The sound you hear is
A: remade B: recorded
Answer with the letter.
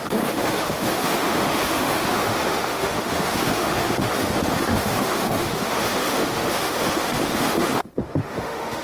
A